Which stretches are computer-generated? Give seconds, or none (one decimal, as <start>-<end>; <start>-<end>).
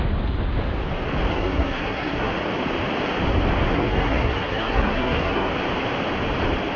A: 1.3-2.3; 3.7-5.5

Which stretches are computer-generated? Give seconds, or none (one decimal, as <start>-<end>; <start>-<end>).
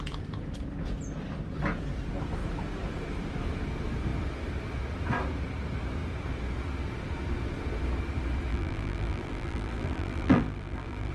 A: 8.5-11.1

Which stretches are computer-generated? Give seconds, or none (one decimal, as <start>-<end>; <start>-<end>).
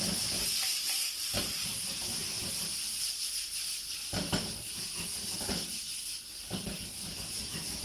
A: 7.1-7.8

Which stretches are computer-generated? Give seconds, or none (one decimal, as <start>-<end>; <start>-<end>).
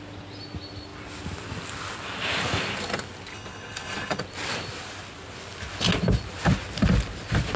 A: 3.3-4.2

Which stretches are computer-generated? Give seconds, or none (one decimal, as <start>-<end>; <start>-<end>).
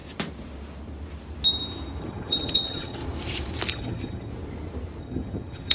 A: 2.0-3.0; 3.7-4.3; 5.0-5.7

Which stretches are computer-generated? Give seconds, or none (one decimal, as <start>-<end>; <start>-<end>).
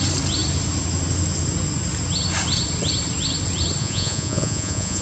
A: 3.8-5.0